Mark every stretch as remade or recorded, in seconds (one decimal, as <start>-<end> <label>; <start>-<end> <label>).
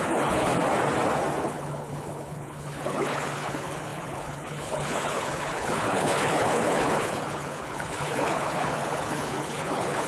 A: 0.0-0.5 remade; 0.5-1.4 recorded; 1.4-10.1 remade